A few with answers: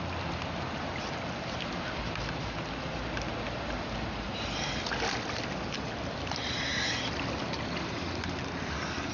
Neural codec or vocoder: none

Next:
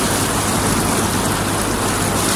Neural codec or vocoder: none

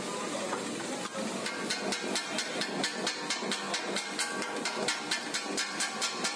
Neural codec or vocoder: none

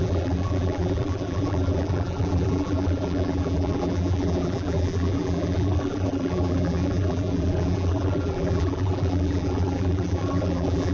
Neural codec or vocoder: vocoder, BigVGAN v2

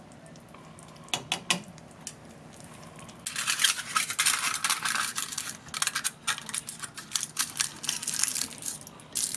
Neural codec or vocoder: none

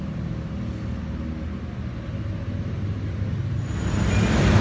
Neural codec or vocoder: none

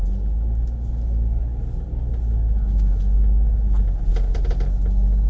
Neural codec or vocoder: none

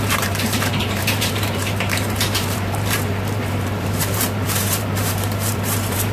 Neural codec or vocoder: vocoder, BigVGAN v2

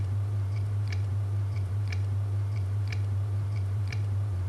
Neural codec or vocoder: vocoder, BigVGAN v2